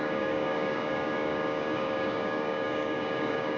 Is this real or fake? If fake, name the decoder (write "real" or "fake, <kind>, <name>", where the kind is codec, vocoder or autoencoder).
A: fake, codec, DAC